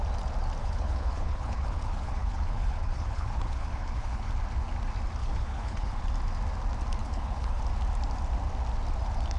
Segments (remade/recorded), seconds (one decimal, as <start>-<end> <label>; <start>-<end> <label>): 0.0-0.6 recorded; 0.6-4.3 remade; 4.3-5.2 recorded; 5.2-6.0 remade; 6.0-7.0 recorded; 7.0-7.6 remade; 7.6-9.4 recorded